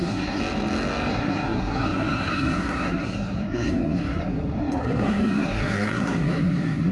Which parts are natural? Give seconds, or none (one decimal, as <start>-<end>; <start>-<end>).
0.4-1.1